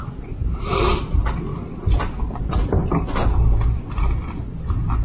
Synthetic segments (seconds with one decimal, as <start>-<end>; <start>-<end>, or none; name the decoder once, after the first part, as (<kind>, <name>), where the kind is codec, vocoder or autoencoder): 0.0-1.5 (vocoder, BigVGAN v2); 2.4-5.0